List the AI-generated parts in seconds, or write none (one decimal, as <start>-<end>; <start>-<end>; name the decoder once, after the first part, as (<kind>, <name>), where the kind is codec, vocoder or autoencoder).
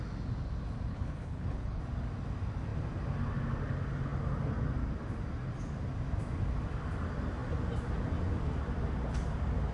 0.9-1.8 (codec, HILCodec)